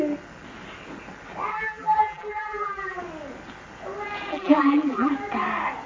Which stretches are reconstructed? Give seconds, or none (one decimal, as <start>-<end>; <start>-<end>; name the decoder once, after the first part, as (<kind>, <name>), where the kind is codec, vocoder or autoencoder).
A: 1.5-3.0 (vocoder, BigVGAN v2); 4.3-5.1